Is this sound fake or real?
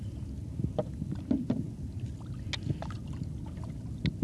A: real